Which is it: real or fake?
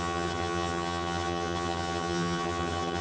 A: fake